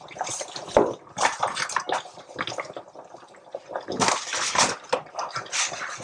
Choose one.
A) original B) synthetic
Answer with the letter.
A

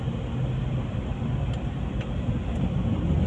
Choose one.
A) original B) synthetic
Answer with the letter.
A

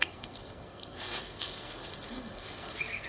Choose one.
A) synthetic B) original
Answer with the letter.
A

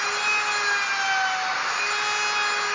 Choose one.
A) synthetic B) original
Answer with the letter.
B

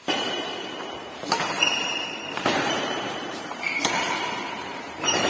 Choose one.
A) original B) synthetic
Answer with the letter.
B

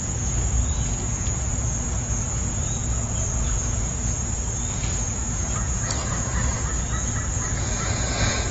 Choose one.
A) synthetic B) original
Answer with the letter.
A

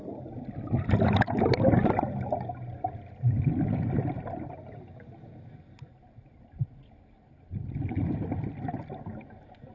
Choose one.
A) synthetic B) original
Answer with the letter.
B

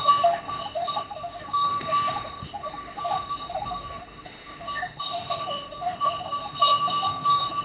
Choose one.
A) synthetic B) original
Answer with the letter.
A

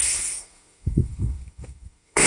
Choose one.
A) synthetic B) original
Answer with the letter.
A